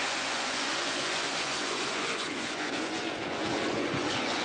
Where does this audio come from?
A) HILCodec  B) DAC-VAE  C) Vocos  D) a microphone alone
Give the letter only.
C